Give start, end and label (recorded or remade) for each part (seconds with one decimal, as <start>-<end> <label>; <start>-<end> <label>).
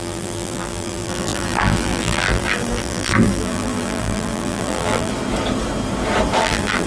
0.0-5.1 remade; 5.1-6.4 recorded; 6.4-6.9 remade